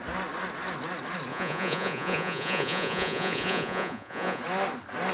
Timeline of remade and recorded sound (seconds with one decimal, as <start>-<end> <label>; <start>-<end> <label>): 0.0-1.3 recorded; 1.3-4.4 remade; 4.4-5.1 recorded